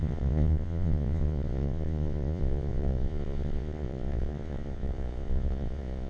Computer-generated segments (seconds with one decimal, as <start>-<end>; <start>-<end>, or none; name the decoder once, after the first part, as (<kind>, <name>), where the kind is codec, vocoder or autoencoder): 0.0-6.1 (vocoder, Vocos)